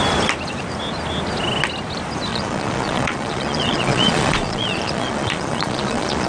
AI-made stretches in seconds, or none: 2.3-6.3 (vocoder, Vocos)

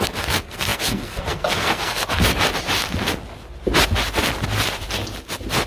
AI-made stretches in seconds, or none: 0.0-2.3 (codec, SNAC)